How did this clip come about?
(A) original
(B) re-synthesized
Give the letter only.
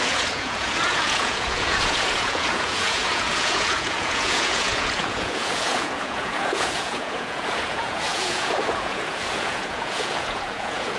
B